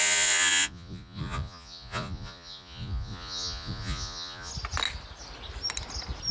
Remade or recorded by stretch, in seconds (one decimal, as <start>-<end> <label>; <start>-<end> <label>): 0.0-4.5 remade; 4.5-6.3 recorded